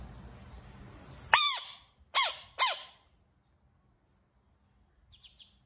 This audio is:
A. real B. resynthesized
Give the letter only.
A